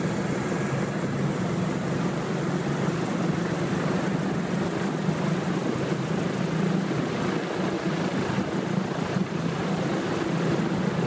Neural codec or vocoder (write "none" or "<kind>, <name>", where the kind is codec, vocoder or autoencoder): none